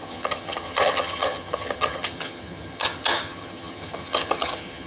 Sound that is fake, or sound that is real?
fake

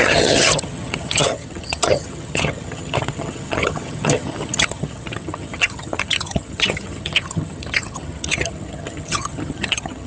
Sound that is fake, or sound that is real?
fake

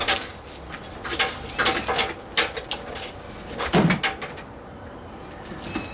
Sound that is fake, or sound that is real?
real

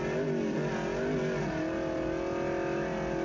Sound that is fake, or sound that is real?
real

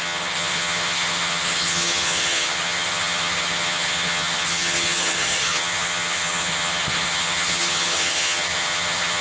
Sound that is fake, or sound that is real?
fake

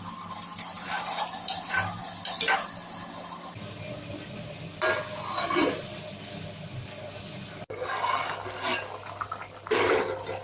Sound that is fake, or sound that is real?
real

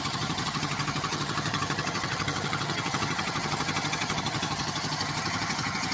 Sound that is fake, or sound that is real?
fake